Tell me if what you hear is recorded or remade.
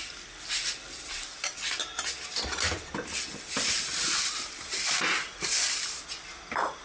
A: recorded